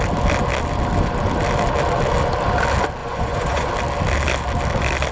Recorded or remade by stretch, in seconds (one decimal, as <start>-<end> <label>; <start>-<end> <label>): 0.0-3.0 recorded; 3.0-3.7 remade; 3.7-5.1 recorded